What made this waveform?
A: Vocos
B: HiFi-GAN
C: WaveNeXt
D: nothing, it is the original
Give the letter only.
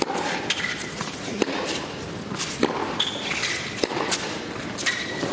D